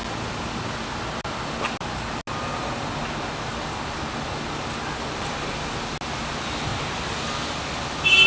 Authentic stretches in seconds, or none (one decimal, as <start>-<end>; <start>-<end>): 0.0-8.3

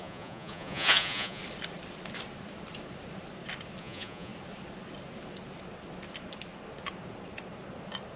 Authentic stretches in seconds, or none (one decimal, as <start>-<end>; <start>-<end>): 1.4-3.8; 4.3-8.2

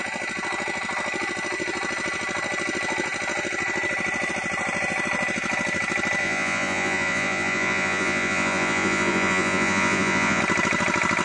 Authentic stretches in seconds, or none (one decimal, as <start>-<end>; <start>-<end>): 0.0-6.2; 10.4-11.2

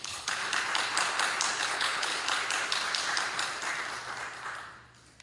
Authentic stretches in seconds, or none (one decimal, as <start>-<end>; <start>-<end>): 0.4-1.6; 2.1-5.2